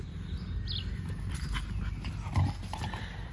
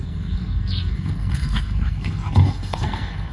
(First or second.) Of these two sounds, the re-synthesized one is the second